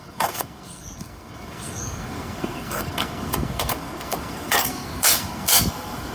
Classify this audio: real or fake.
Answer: fake